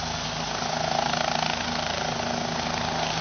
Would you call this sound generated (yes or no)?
no